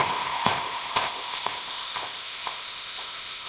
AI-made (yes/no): yes